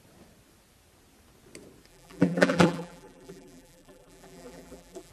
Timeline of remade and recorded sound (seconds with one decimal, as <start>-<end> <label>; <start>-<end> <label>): 0.0-1.9 recorded; 1.9-5.1 remade